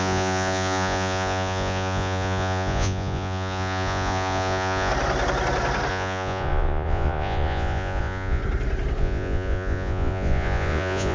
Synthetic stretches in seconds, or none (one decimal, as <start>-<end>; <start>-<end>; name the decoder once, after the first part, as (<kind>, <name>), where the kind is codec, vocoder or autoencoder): 0.0-4.9 (vocoder, Vocos); 5.9-8.4; 9.0-11.1